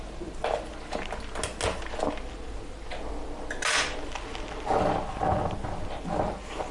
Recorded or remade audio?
recorded